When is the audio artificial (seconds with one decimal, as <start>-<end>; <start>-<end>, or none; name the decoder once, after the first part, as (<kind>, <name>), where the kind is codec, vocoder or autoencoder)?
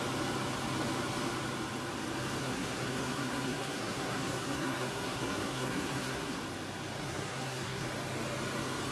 2.4-6.4 (codec, SNAC); 7.0-7.9